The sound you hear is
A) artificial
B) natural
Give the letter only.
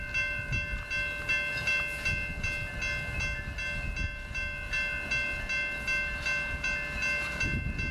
B